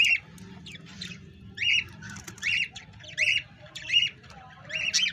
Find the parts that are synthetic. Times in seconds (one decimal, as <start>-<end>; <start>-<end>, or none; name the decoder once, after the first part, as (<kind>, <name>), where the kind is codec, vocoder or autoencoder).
0.9-4.0 (vocoder, BigVGAN v2)